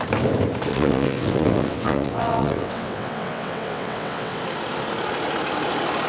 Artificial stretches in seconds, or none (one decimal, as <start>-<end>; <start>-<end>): 0.7-4.4

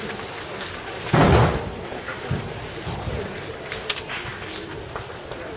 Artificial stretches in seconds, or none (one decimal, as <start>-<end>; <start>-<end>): none

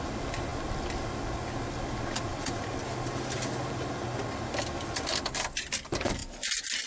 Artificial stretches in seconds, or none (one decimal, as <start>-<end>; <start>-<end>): none

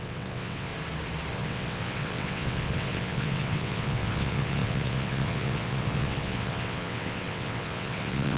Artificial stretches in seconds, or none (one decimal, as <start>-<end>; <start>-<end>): 0.0-0.7; 1.3-8.4